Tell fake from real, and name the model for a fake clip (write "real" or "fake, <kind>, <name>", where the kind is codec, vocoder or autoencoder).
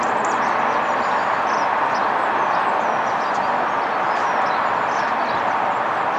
real